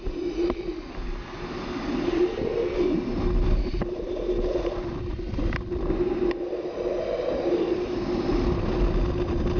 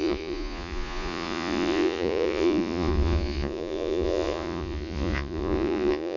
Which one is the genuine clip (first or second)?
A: first